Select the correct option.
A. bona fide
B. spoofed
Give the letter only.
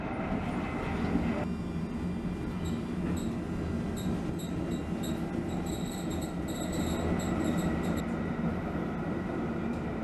A